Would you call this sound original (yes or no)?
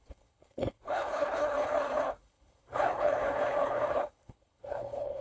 no